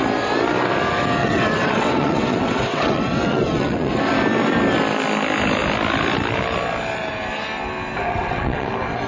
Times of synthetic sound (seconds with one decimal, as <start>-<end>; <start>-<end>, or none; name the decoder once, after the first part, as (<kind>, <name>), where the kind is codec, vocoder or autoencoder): 1.2-4.0 (vocoder, WaveNeXt); 8.1-8.7